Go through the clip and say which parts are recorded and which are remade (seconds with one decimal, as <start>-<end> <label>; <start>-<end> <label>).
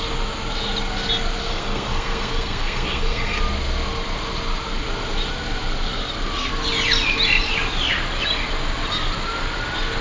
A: 0.0-1.5 recorded; 1.5-3.4 remade; 3.4-10.0 recorded